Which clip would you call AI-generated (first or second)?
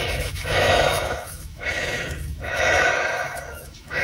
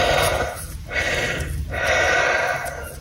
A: first